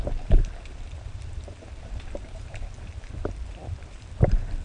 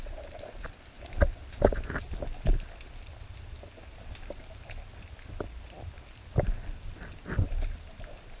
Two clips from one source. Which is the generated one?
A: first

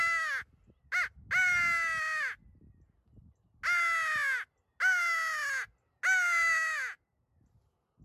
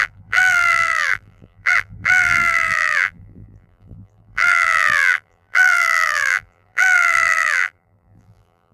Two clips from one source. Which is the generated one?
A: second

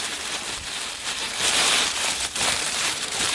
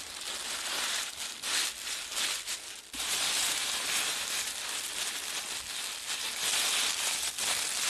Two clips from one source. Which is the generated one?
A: first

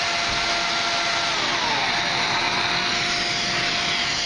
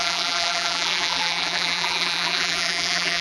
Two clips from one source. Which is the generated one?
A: second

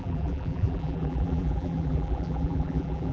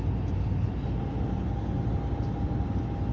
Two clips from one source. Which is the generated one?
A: first